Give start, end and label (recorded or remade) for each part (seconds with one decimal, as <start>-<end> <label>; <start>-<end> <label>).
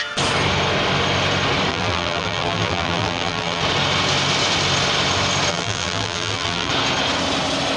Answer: 0.0-1.7 recorded; 1.7-3.6 remade; 3.6-5.5 recorded; 5.5-6.7 remade; 6.7-7.8 recorded